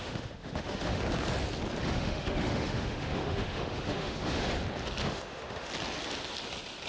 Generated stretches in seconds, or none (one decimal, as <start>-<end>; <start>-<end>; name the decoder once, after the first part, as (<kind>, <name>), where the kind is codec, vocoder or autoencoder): 0.0-1.0 (autoencoder, DAC-VAE); 1.8-4.5; 5.0-5.7

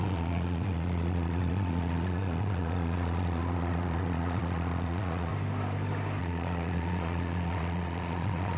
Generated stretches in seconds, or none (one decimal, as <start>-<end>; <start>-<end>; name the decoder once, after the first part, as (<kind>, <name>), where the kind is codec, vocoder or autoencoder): 0.0-5.3 (vocoder, Vocos); 6.2-8.6

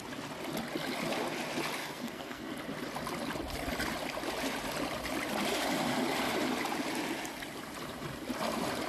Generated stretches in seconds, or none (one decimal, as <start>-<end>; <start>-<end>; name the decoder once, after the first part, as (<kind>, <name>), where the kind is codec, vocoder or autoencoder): 1.8-2.5 (codec, SNAC)

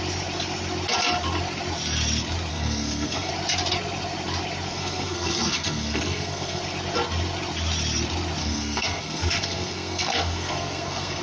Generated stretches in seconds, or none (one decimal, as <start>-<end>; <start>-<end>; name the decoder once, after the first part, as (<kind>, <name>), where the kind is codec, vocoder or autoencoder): 2.5-3.3 (codec, SNAC); 4.7-6.6; 8.4-11.2

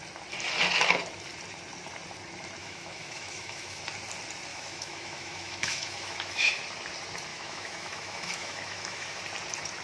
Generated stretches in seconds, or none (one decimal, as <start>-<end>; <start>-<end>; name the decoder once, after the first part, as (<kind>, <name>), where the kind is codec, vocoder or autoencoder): 2.6-3.8 (autoencoder, DAC-VAE); 4.5-6.5; 7.3-9.2

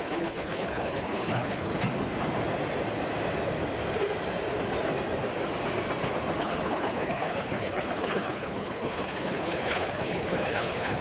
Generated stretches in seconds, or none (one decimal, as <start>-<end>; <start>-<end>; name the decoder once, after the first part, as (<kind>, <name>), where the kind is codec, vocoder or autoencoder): 0.0-1.7 (codec, HILCodec); 6.4-11.0

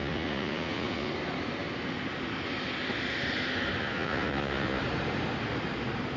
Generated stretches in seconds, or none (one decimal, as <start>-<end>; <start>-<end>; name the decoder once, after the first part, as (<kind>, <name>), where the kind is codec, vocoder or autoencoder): 0.0-1.1 (vocoder, Vocos); 3.8-4.8